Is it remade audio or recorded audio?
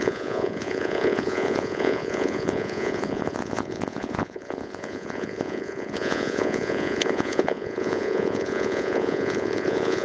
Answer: remade